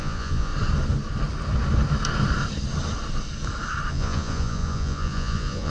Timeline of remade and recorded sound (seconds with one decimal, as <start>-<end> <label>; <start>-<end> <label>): 0.0-0.5 remade; 0.5-3.9 recorded; 3.9-5.7 remade